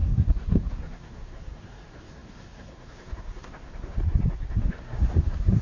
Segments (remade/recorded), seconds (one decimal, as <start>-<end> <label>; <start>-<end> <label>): 0.0-4.0 remade; 4.0-4.6 recorded; 4.6-5.6 remade